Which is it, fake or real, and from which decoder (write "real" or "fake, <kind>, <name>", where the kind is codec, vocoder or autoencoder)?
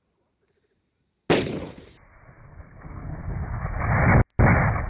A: real